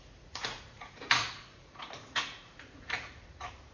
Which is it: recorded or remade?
remade